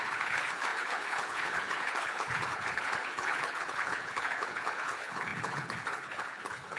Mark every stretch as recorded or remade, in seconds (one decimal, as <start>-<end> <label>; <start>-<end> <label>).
0.0-6.8 remade